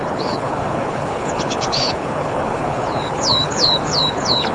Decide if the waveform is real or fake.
fake